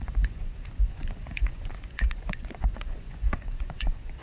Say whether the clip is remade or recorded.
remade